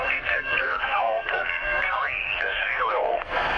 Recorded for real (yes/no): no